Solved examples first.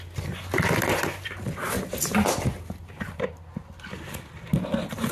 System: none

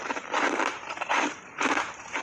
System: vocoder, BigVGAN v2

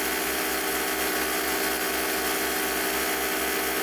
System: none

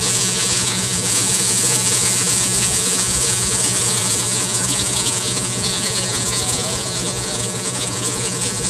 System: vocoder, Vocos